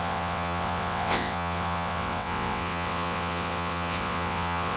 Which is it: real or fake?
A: fake